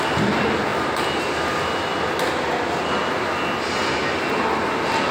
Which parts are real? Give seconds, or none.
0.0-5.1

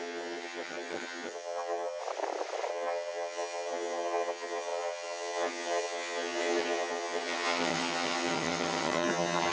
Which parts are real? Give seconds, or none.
2.0-2.7

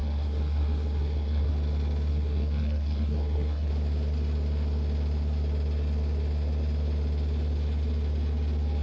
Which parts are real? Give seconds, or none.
1.5-2.1; 3.7-8.8

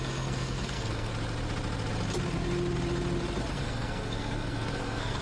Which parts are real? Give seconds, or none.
1.1-3.5

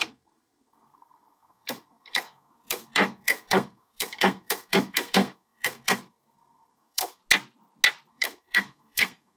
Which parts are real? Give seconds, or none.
7.2-8.1